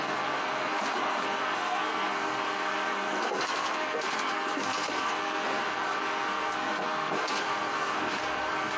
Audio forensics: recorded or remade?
remade